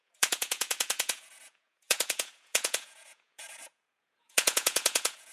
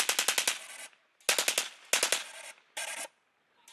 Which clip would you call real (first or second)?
second